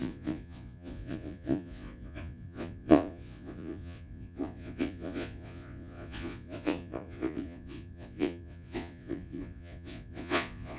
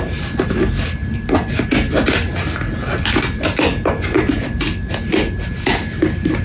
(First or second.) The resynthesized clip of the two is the first